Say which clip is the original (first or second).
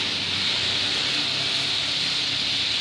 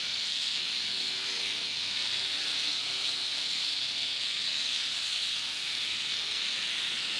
first